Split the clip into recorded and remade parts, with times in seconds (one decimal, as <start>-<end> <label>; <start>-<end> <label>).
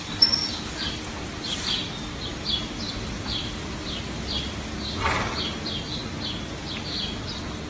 0.0-7.7 recorded